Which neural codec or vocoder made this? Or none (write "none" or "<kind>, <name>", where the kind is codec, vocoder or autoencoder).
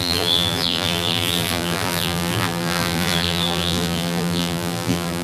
vocoder, BigVGAN v2